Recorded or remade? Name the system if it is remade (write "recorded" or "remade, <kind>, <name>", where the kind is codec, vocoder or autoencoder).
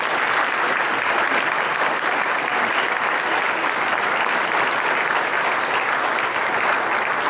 recorded